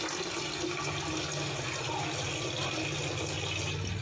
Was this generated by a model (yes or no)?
no